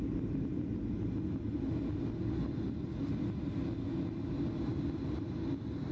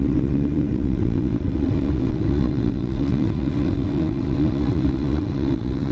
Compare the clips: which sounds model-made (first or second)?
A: second